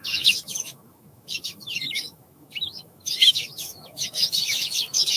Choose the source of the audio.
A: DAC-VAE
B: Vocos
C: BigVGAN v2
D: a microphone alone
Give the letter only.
A